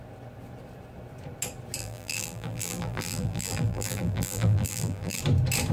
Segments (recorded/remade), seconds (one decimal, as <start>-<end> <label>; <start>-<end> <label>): 0.0-1.8 recorded; 1.8-5.2 remade; 5.2-5.7 recorded

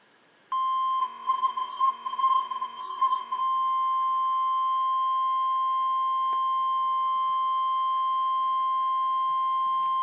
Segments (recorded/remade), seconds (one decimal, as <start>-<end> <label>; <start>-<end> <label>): 0.0-1.0 recorded; 1.0-3.4 remade; 3.4-10.0 recorded

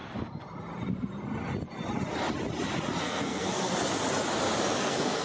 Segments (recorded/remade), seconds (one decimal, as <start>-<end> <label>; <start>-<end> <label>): 0.0-3.0 recorded; 3.0-3.7 remade; 3.7-4.8 recorded; 4.8-5.2 remade

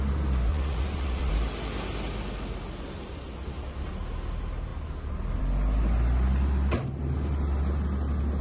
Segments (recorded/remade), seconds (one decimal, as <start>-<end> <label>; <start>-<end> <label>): 0.0-0.5 recorded; 0.5-1.3 remade; 1.3-8.4 recorded